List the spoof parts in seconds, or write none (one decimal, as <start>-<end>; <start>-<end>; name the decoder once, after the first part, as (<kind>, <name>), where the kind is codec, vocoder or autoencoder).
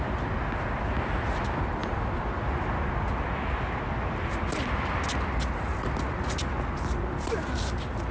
none